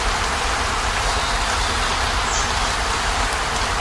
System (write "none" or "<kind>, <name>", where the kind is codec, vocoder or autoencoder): none